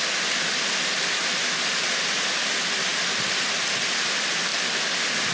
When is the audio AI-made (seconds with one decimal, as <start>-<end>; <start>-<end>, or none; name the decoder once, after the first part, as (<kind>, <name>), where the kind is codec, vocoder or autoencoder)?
none